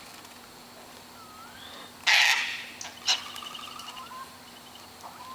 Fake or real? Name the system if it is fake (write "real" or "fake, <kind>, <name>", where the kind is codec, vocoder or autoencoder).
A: real